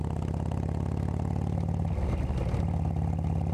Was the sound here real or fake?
real